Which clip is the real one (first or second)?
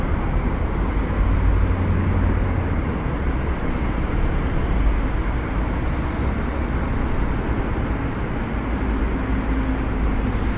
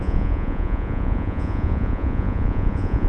first